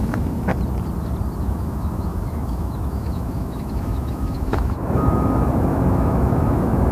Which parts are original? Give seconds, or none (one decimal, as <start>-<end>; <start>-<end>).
0.5-1.4